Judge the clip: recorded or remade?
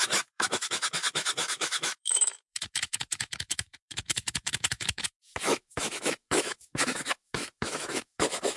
remade